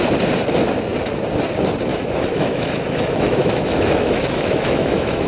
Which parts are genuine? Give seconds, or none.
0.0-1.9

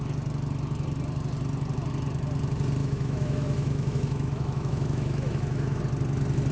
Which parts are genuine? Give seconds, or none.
0.0-2.8; 5.8-6.5

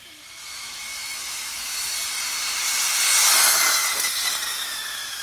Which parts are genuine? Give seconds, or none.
1.9-4.5

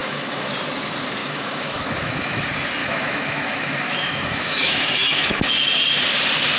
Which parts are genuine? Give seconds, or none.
0.5-1.2; 2.4-2.8; 5.5-6.6

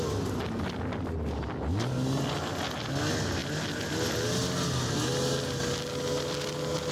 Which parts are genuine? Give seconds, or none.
0.0-6.9